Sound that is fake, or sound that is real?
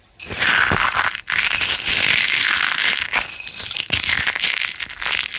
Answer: real